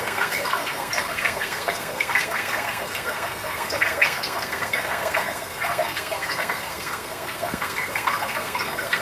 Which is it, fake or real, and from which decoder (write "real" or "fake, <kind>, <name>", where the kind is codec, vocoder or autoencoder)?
fake, codec, SNAC